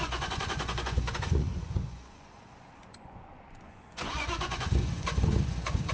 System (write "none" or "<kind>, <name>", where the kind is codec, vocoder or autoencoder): vocoder, Vocos